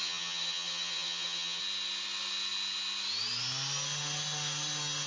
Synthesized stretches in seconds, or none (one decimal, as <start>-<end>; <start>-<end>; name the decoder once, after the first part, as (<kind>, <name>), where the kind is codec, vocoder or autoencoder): 0.0-1.6 (vocoder, HiFi-GAN)